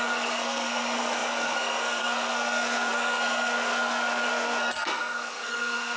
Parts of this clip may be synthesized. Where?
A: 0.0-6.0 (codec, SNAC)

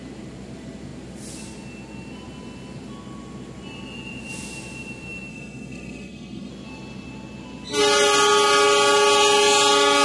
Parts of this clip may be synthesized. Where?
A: 5.3-6.5 (codec, SNAC)